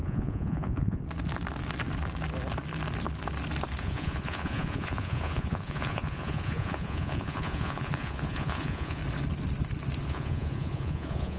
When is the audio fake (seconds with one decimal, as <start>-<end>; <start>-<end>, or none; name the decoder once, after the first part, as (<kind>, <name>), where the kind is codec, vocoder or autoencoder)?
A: 0.0-1.0 (vocoder, Vocos); 3.8-9.0; 10.1-11.4